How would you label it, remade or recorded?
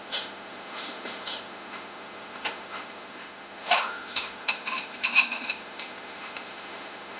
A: remade